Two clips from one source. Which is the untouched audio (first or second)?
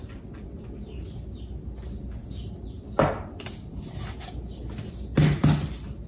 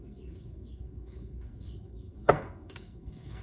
first